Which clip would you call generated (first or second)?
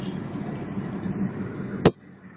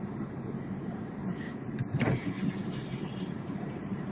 second